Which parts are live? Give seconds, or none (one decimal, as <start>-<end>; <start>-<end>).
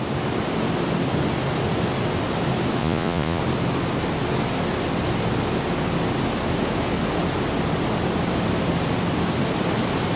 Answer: 0.0-2.8; 3.4-10.2